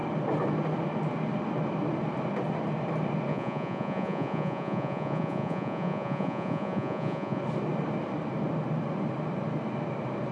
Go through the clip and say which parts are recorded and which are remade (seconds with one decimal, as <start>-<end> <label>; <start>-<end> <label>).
0.0-3.3 recorded; 3.3-7.4 remade; 7.4-10.3 recorded